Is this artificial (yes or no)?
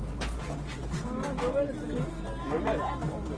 no